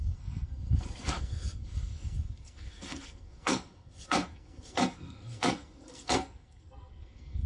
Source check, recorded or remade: remade